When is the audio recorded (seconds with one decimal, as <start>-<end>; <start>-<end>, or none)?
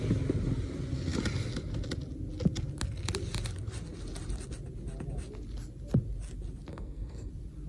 0.0-6.7; 7.3-7.7